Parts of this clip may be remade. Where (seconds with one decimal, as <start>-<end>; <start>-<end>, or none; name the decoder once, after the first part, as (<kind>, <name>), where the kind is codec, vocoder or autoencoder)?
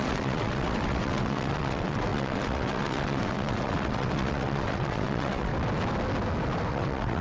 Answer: 0.0-5.5 (vocoder, WaveNeXt); 6.7-7.2